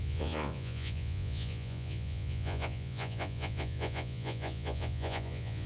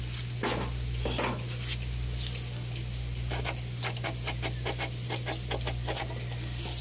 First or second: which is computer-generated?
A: first